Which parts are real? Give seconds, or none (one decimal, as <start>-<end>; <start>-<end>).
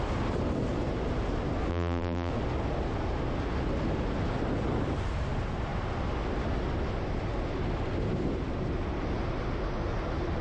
0.0-1.7; 2.3-10.4